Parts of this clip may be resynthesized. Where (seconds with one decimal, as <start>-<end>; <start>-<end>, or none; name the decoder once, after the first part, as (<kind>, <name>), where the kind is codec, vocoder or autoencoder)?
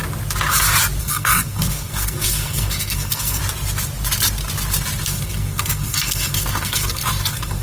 1.0-3.4 (codec, SNAC); 5.0-7.6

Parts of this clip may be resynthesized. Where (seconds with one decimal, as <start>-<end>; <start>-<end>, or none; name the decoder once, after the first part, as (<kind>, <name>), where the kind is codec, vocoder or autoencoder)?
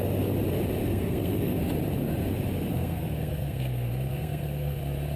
0.8-1.6 (codec, SNAC); 2.7-4.8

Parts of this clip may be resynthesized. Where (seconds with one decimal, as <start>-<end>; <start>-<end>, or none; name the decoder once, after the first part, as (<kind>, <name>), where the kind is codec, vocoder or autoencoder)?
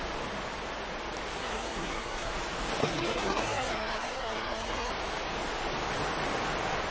1.4-2.3 (codec, SNAC); 2.8-4.9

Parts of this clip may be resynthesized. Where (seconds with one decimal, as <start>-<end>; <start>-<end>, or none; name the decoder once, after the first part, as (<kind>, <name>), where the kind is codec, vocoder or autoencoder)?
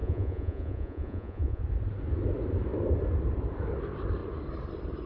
0.0-1.6 (vocoder, Vocos)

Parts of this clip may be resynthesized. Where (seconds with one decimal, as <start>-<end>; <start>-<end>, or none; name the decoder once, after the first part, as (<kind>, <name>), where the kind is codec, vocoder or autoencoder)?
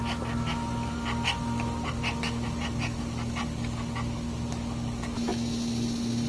none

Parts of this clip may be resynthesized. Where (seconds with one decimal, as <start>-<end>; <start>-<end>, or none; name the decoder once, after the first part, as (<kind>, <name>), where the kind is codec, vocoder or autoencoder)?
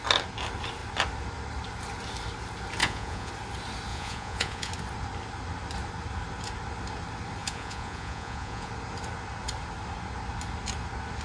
2.8-3.3 (vocoder, Vocos); 3.9-4.7; 7.4-8.7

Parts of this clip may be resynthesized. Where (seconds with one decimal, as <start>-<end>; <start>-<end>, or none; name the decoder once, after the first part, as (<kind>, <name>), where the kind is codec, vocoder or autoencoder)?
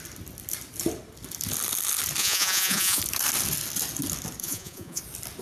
2.2-3.0 (vocoder, Vocos); 4.4-5.0